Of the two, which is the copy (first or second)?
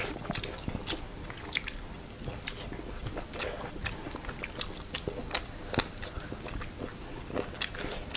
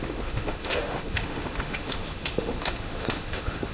second